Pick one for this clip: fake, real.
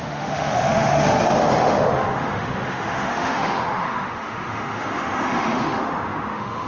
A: fake